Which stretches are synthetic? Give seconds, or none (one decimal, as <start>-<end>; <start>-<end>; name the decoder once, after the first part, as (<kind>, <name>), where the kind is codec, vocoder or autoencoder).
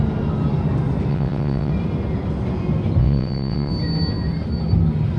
1.1-1.7 (vocoder, WaveNeXt); 3.0-3.7